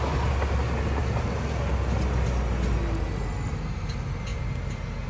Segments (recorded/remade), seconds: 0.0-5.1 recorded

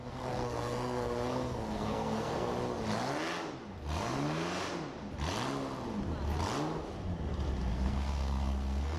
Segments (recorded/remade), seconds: 0.0-2.5 remade; 2.5-7.7 recorded; 7.7-9.0 remade